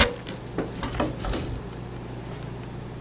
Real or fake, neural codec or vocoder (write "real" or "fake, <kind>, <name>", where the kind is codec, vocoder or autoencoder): real